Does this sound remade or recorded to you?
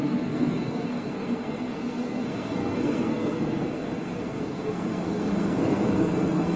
remade